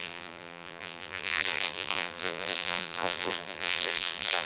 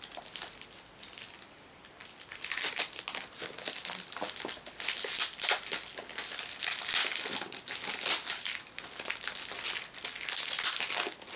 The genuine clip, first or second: second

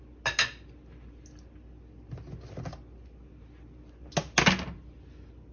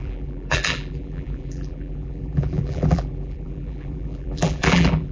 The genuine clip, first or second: first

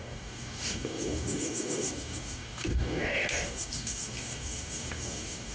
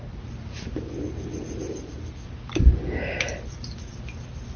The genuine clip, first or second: second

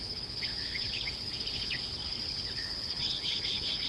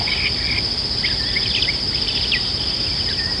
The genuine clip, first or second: second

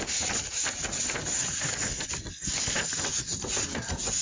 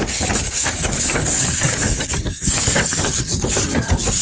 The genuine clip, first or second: first